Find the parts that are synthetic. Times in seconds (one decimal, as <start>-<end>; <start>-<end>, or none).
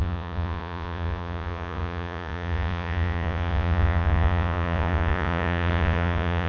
0.0-6.5